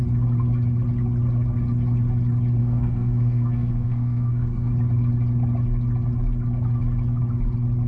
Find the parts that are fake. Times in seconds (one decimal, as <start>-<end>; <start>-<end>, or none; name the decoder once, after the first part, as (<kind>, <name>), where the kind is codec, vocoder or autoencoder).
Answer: 2.6-4.7 (codec, SNAC)